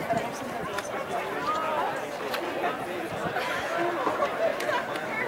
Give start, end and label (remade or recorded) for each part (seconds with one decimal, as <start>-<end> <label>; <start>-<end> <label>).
0.0-5.3 recorded